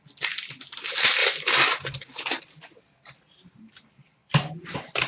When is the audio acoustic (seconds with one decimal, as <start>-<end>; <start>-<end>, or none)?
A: 0.0-1.2; 3.2-4.2